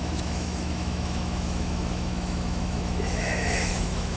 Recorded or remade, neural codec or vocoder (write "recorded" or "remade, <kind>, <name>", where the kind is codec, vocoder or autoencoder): remade, autoencoder, DAC-VAE